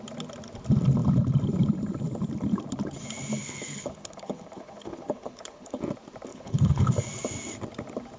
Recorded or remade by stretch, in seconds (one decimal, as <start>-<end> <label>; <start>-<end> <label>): 0.0-3.4 recorded; 3.4-5.8 remade; 5.8-6.3 recorded; 6.3-6.9 remade; 6.9-8.2 recorded